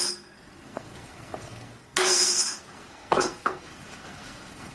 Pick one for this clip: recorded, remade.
remade